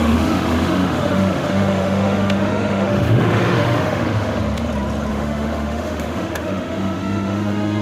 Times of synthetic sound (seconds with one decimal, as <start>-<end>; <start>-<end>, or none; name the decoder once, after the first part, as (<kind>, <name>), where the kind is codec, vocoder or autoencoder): 0.0-4.4 (autoencoder, DAC-VAE); 5.1-7.8